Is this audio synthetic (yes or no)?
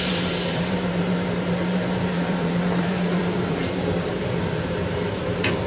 yes